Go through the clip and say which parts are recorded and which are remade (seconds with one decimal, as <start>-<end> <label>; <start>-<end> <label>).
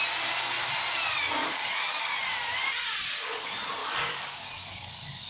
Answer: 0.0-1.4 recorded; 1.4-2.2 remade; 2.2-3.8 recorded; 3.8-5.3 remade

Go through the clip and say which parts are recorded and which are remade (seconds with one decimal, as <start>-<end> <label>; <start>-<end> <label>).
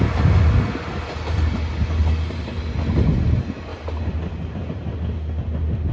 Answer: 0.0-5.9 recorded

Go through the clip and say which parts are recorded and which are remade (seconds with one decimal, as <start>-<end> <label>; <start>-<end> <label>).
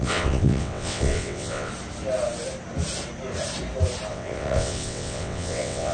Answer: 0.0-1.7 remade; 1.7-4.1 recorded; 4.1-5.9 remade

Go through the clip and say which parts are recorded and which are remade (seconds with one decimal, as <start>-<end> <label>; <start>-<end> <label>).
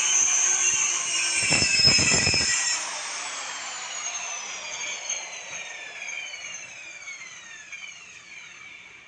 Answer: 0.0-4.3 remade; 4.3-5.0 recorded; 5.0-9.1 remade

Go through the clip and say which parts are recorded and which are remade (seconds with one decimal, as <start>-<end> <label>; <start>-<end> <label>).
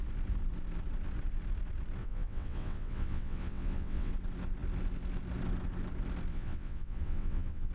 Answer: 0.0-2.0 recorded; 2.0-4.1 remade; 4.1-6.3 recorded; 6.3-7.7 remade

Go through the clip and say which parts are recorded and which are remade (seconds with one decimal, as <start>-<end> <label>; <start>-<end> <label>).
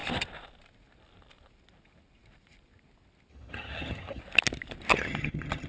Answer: 0.0-3.3 recorded; 3.3-4.2 remade; 4.2-4.9 recorded; 4.9-5.7 remade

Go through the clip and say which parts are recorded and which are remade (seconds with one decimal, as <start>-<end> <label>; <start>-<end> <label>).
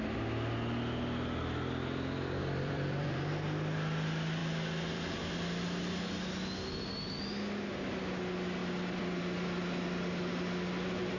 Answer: 0.0-2.4 recorded; 2.4-3.3 remade; 3.3-8.6 recorded; 8.6-9.2 remade; 9.2-11.2 recorded